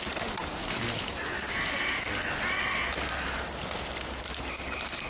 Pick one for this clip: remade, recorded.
recorded